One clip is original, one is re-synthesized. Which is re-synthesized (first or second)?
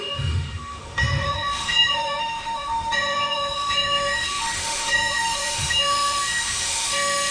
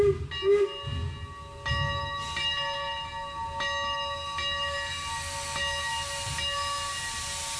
first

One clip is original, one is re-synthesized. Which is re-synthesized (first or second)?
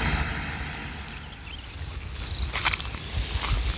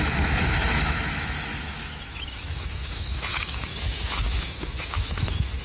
second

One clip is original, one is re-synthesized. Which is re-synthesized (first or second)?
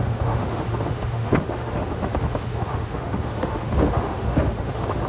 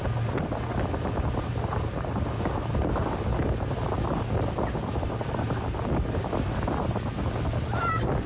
first